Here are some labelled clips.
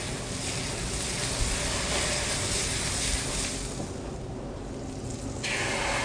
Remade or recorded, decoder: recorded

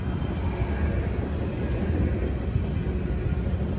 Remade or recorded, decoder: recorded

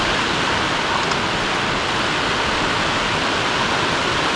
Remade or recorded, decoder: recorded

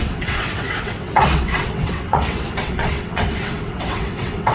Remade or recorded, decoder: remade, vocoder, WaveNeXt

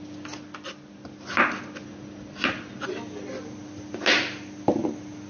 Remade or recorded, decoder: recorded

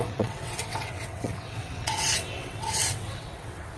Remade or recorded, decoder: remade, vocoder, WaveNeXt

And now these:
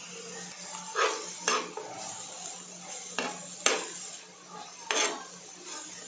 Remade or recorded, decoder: recorded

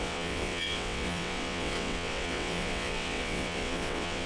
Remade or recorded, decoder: remade, vocoder, WaveNeXt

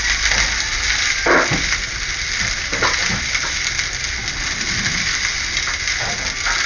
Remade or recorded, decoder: recorded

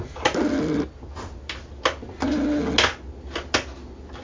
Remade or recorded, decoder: recorded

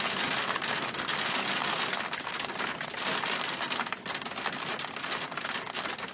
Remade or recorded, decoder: recorded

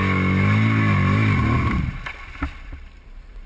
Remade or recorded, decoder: recorded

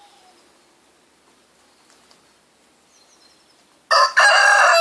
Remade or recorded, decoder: recorded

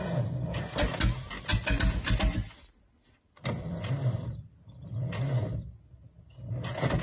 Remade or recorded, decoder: recorded